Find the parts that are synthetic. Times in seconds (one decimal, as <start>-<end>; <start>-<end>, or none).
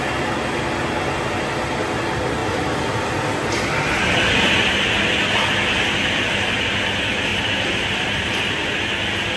7.3-8.4